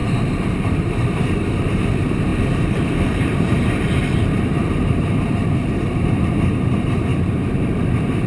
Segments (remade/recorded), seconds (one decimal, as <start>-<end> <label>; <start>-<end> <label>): 0.0-0.5 recorded; 0.5-8.3 remade